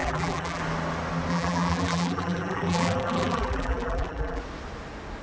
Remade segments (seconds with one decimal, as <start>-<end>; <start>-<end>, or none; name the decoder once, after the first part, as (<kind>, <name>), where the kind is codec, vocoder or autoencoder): 0.0-0.6 (vocoder, BigVGAN v2); 1.3-4.4